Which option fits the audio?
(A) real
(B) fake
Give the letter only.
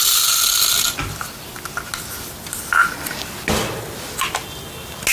A